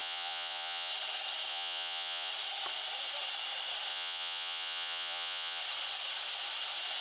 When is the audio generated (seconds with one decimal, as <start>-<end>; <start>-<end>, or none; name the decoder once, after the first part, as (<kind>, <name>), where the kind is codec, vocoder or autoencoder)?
0.0-0.9 (vocoder, Vocos); 1.5-2.3; 3.9-5.6